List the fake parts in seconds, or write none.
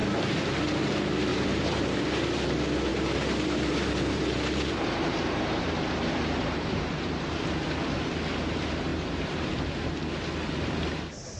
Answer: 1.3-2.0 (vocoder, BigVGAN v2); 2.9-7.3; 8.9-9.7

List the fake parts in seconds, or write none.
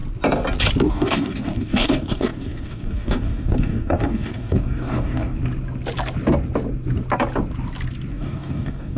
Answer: 0.9-5.4 (codec, DAC); 8.1-9.0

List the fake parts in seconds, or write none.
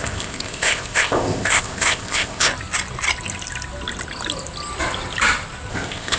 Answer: 0.0-2.5 (codec, ZipCodec); 5.7-6.2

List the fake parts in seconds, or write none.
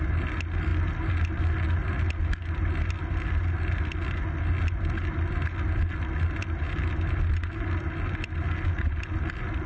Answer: none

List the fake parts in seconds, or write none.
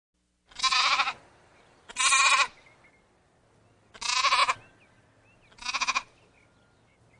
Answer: none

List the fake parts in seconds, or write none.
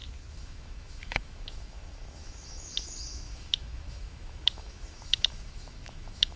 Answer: 0.0-6.4 (autoencoder, DAC-VAE)